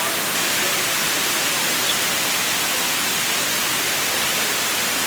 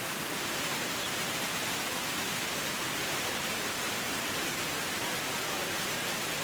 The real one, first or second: first